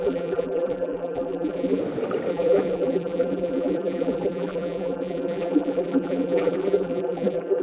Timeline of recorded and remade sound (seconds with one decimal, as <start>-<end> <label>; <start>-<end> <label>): 0.0-1.8 remade; 1.8-2.3 recorded; 2.3-7.6 remade